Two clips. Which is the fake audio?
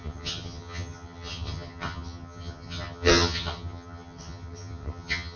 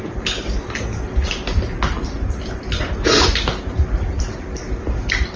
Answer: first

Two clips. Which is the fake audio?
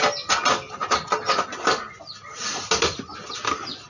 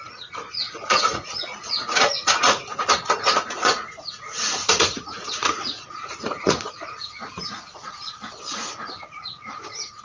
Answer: second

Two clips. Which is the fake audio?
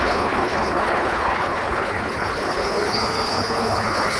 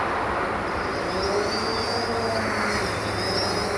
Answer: first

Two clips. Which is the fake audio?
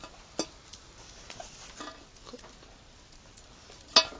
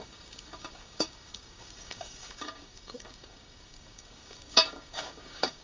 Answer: second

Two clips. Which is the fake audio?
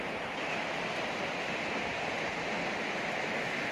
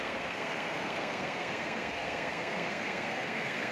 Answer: second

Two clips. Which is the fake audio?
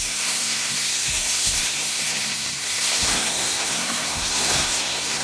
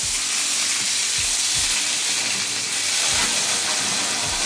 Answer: first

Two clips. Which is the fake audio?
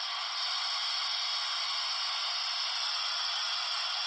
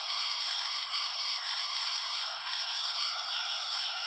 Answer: second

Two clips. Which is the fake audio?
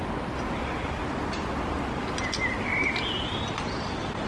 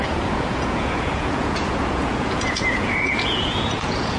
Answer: second